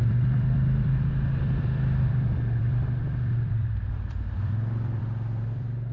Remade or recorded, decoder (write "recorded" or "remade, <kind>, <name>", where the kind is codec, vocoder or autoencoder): remade, vocoder, BigVGAN v2